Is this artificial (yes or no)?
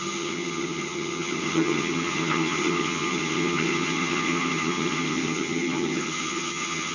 yes